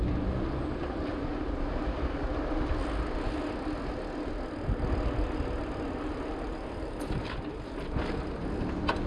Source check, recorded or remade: recorded